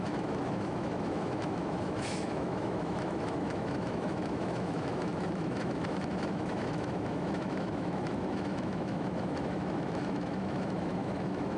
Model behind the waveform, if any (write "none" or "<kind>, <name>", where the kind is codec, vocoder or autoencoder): autoencoder, DAC-VAE